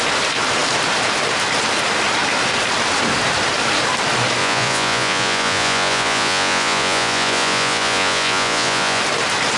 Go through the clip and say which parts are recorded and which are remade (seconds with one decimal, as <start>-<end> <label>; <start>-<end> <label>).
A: 0.0-4.4 recorded; 4.4-9.0 remade; 9.0-9.6 recorded